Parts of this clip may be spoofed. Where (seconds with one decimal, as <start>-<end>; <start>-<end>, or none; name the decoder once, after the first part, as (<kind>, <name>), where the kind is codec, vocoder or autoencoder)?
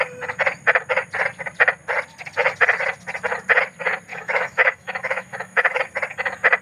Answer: 4.1-5.8 (autoencoder, DAC-VAE)